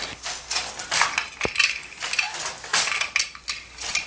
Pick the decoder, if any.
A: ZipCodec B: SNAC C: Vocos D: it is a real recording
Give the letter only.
D